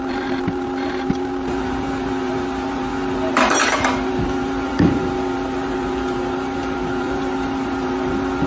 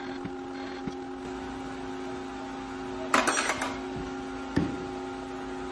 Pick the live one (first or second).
second